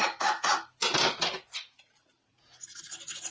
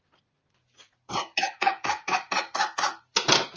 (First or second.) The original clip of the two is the first